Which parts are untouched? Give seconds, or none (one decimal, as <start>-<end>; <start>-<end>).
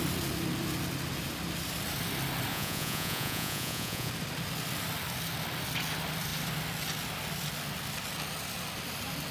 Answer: 0.0-2.5; 4.1-9.3